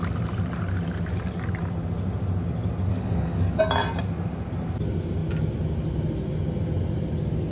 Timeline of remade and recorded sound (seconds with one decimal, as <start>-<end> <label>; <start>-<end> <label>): 0.0-2.9 recorded; 2.9-3.6 remade; 3.6-7.5 recorded